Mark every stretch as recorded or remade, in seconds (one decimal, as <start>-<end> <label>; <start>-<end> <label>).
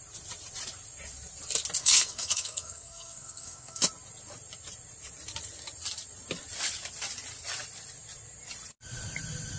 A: 0.0-1.8 recorded; 1.8-3.8 remade; 3.8-9.6 recorded